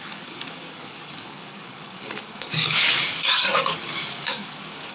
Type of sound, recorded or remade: remade